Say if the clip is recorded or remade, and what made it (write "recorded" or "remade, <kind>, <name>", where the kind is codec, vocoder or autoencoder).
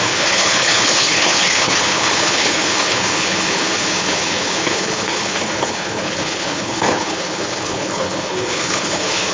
remade, codec, HILCodec